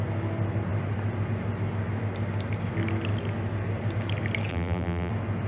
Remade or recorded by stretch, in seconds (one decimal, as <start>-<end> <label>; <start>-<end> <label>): 0.0-4.5 recorded; 4.5-5.1 remade; 5.1-5.5 recorded